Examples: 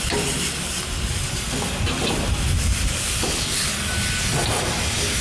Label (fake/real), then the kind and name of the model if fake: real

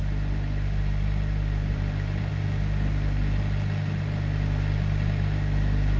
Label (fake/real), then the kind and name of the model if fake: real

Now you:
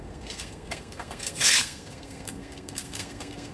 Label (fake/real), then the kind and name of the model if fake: fake, codec, SNAC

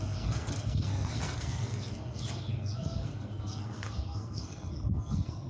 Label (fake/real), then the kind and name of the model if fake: fake, codec, SNAC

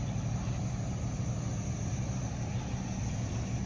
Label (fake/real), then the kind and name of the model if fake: real